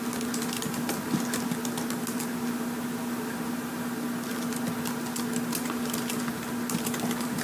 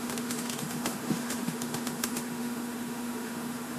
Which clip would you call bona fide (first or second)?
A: first